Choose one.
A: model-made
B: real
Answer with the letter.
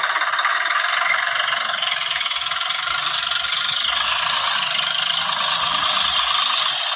B